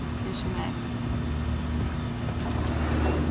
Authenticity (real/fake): real